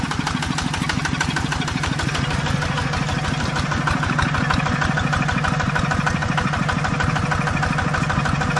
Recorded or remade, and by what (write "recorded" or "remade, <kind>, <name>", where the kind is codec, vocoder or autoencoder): recorded